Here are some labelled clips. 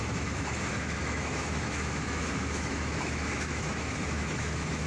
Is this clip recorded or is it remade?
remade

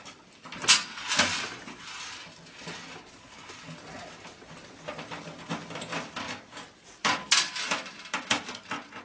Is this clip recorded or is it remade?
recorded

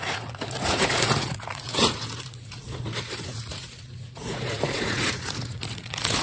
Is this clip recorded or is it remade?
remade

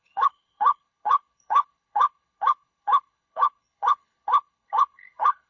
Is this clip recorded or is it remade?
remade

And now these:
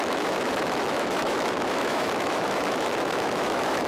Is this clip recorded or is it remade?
remade